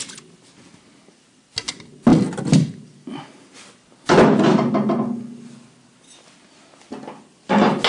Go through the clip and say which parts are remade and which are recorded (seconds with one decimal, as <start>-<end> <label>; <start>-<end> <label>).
0.0-7.9 recorded